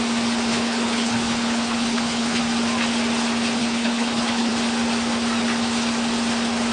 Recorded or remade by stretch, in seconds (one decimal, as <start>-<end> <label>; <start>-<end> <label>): 0.0-0.5 recorded; 0.5-2.4 remade; 2.4-3.6 recorded; 3.6-4.5 remade; 4.5-6.7 recorded